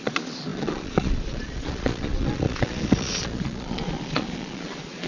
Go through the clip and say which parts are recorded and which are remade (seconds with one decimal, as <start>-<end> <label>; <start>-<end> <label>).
0.0-5.1 remade